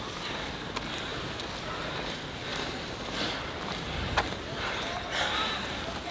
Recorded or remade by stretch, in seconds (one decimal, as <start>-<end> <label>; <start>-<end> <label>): 0.0-6.1 recorded

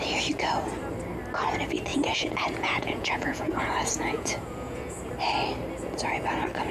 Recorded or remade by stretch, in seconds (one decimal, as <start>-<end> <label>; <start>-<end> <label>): 0.0-1.9 recorded; 1.9-5.1 remade; 5.1-6.7 recorded

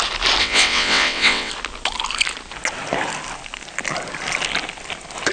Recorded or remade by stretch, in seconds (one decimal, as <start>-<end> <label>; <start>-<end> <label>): 0.0-0.4 recorded; 0.4-1.5 remade; 1.5-5.3 recorded

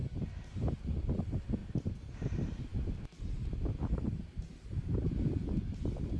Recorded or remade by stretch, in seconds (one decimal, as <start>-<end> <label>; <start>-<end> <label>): 0.0-0.8 recorded; 0.8-1.6 remade; 1.6-2.1 recorded; 2.1-6.2 remade

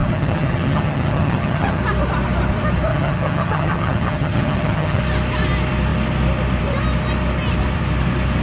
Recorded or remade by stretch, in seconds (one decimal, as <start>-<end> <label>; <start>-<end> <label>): 0.0-1.8 remade; 1.8-2.9 recorded; 2.9-5.0 remade; 5.0-8.4 recorded

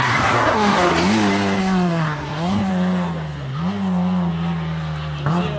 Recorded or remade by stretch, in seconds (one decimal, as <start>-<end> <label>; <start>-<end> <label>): 0.0-0.9 remade; 0.9-1.6 recorded; 1.6-2.7 remade; 2.7-5.6 recorded